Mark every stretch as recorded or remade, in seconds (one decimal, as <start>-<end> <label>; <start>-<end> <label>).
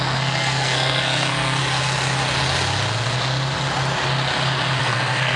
0.0-1.6 remade; 1.6-4.8 recorded; 4.8-5.4 remade